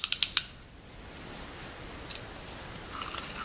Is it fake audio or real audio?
real